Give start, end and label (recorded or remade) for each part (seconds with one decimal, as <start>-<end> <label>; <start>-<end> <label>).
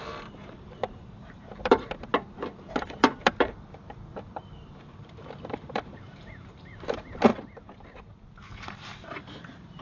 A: 0.0-2.1 remade; 2.1-2.8 recorded; 2.8-7.3 remade; 7.3-8.5 recorded; 8.5-9.8 remade